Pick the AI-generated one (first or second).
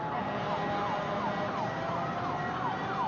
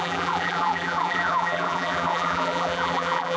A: second